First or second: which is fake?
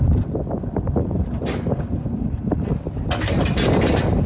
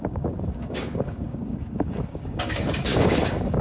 second